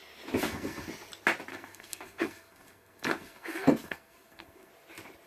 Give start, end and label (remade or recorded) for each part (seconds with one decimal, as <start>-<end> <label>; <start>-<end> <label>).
0.0-0.4 recorded; 0.4-0.9 remade; 0.9-1.5 recorded; 1.5-4.7 remade; 4.7-5.3 recorded